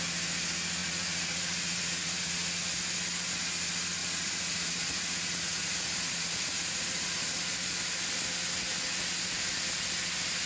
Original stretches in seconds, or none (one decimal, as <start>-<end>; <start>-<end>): 0.0-0.8; 2.6-4.0; 7.4-10.5